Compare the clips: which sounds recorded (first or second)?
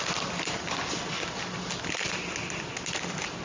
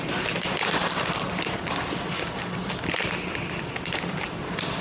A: first